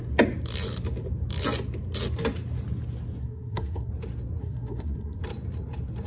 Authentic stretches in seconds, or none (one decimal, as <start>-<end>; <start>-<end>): 0.0-3.2; 3.9-4.4; 5.2-6.1